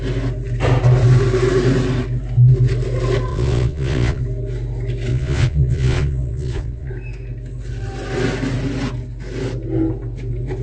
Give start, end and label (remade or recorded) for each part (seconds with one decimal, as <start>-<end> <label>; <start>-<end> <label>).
0.0-3.3 recorded; 3.3-4.2 remade; 4.2-5.1 recorded; 5.1-6.9 remade; 6.9-10.6 recorded